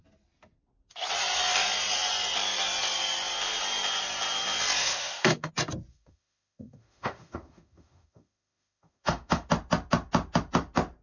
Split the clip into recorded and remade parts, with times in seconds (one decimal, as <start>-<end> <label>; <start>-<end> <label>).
0.0-4.8 recorded; 4.8-5.5 remade; 5.5-5.9 recorded; 5.9-9.5 remade; 9.5-11.0 recorded